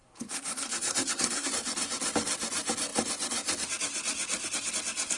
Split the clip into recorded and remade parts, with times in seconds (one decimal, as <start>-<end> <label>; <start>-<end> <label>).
0.0-1.5 remade; 1.5-5.2 recorded